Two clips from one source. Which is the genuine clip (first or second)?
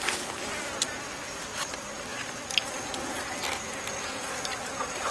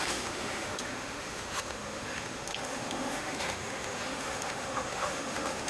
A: first